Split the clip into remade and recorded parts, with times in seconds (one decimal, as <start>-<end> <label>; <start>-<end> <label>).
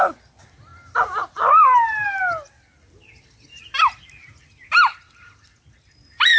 0.0-6.4 recorded